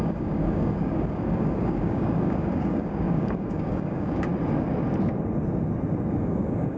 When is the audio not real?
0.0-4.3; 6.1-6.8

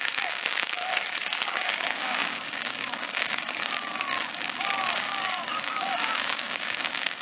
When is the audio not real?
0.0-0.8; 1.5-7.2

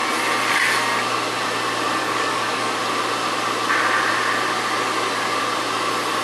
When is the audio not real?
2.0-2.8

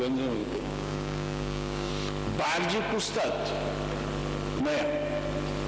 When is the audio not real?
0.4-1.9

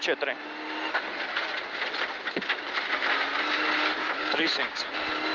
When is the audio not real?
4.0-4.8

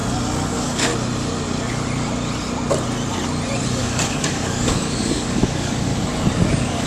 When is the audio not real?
0.5-0.9; 3.8-5.9; 6.5-6.9